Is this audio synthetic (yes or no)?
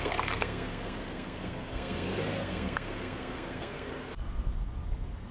yes